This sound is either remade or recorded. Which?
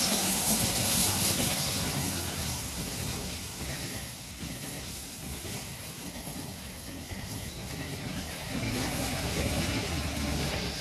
remade